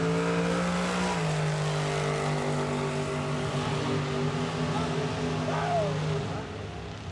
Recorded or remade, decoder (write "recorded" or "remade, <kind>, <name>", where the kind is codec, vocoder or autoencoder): recorded